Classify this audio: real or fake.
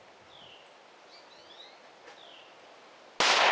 real